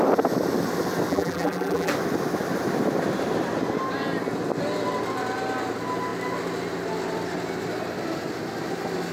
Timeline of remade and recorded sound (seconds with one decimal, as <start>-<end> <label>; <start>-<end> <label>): 0.0-1.1 recorded; 1.1-1.9 remade; 1.9-9.1 recorded